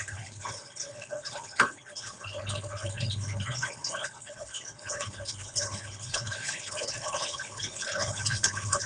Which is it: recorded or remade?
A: remade